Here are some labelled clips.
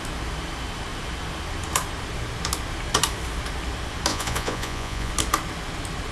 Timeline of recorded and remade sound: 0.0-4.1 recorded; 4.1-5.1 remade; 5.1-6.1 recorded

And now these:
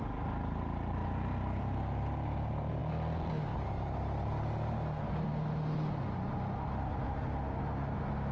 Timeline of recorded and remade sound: 0.0-8.3 recorded

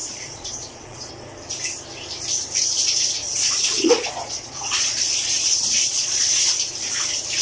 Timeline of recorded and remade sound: 0.0-1.1 remade; 1.1-3.2 recorded; 3.2-6.3 remade; 6.3-7.4 recorded